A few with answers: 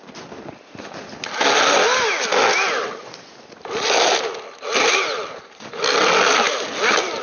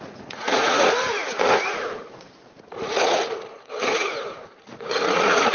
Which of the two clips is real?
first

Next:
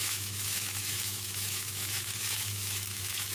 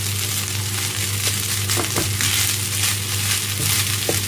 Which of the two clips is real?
second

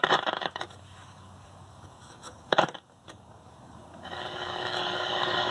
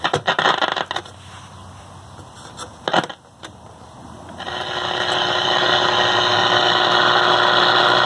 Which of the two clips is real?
second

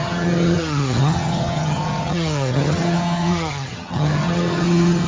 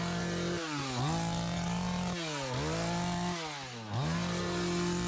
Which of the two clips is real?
second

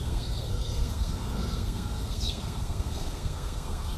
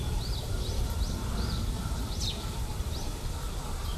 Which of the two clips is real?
second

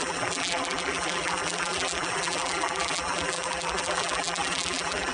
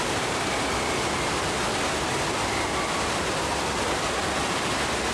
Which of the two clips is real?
second